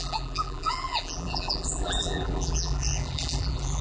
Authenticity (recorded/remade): remade